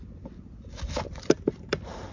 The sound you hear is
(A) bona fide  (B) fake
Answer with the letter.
A